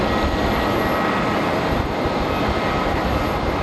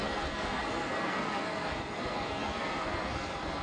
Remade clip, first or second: second